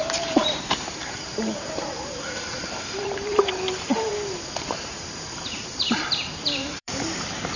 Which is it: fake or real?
fake